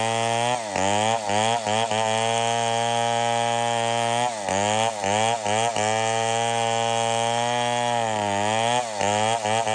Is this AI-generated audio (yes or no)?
no